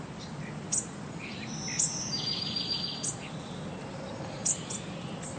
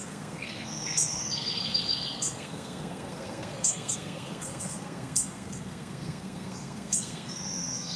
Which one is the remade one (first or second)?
second